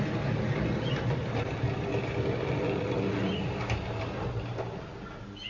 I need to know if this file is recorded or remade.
recorded